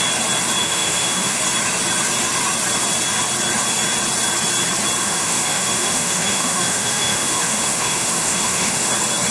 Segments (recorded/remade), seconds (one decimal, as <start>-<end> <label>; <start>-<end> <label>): 0.0-0.6 recorded; 0.6-1.4 remade; 1.4-5.0 recorded; 5.0-8.9 remade; 8.9-9.3 recorded